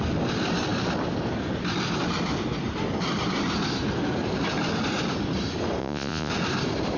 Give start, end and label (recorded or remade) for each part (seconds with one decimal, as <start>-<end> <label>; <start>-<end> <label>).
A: 0.0-5.8 recorded; 5.8-6.3 remade; 6.3-7.0 recorded